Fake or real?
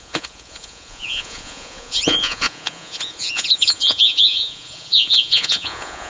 fake